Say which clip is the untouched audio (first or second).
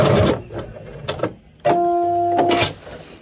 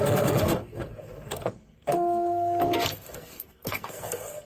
first